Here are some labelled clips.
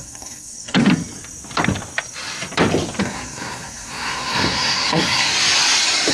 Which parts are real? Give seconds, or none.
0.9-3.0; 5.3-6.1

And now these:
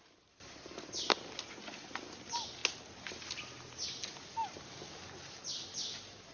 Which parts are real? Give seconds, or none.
0.0-6.3

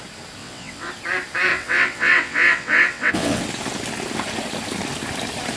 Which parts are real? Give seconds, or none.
0.0-0.4; 0.9-1.5; 3.4-5.6

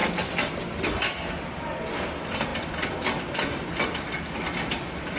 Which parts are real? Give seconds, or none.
0.0-0.7

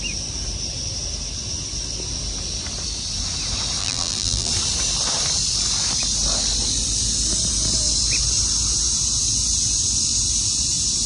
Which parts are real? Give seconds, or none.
0.0-3.8; 4.5-11.1

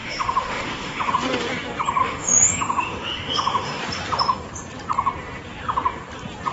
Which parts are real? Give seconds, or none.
1.1-2.0; 3.8-6.5

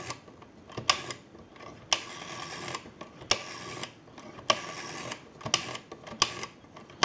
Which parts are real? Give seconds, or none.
0.0-7.0

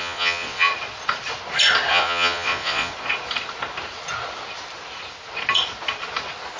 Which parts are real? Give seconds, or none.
0.7-1.9; 2.9-6.6